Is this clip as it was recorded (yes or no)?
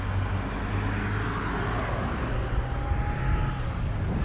yes